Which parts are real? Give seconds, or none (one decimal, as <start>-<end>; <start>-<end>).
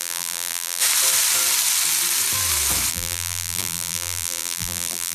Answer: 0.8-2.9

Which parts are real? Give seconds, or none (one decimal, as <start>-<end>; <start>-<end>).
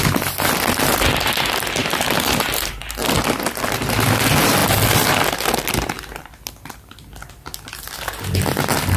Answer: 0.0-1.8; 2.8-9.0